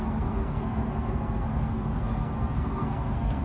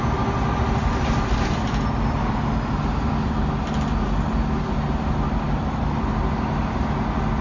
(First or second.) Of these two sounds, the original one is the second